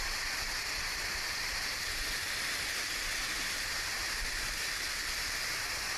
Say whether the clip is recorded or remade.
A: recorded